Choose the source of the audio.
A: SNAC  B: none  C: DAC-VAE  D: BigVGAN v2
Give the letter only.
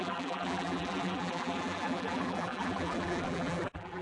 D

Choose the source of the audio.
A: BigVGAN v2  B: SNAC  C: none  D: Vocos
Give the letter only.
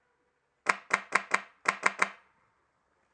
C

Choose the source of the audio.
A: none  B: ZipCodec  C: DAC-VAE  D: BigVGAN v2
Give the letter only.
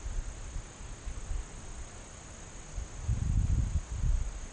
A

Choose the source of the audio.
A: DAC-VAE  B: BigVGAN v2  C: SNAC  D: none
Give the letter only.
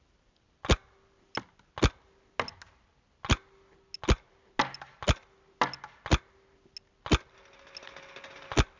D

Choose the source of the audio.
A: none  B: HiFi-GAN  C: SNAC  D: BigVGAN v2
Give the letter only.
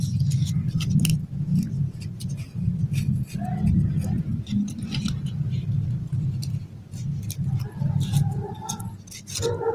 A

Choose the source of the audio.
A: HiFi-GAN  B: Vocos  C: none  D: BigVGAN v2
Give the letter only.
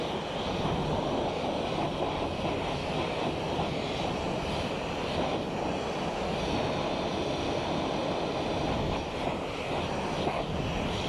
C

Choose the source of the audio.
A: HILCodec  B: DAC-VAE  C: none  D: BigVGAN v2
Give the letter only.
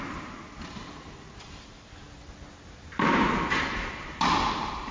C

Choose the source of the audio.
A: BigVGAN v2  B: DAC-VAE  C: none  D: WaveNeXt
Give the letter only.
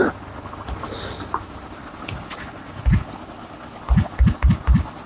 C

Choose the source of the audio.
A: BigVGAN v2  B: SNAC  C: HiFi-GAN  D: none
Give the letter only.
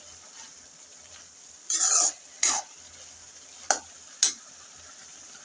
D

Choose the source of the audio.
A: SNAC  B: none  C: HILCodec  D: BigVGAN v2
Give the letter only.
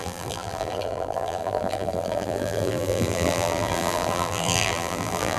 D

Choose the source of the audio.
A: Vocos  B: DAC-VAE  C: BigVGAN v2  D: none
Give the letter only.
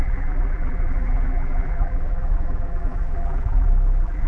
C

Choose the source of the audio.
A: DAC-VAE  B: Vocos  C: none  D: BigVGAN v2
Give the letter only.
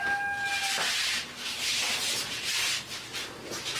C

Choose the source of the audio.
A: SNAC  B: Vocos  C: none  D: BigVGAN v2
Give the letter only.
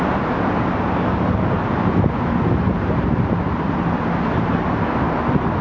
C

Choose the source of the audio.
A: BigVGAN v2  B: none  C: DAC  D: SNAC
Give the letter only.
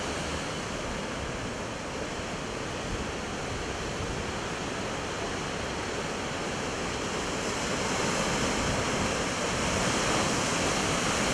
B